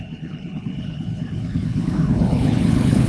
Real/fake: fake